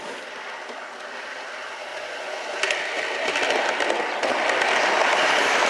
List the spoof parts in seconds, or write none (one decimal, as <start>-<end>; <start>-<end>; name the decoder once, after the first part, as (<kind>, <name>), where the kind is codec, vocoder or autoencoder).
1.9-2.4 (vocoder, Vocos)